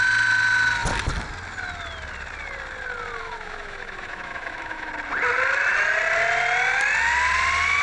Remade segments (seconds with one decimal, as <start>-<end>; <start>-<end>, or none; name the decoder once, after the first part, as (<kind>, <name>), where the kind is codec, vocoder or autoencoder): 3.2-4.9 (autoencoder, DAC-VAE)